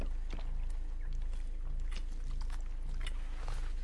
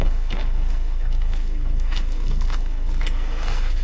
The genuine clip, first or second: first